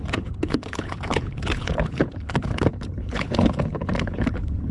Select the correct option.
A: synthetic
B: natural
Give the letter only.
A